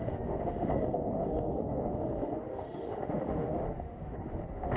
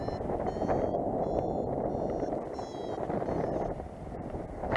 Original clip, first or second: second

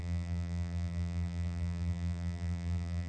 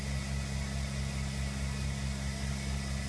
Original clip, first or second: second